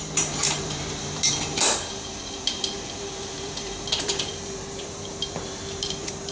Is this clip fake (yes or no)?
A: yes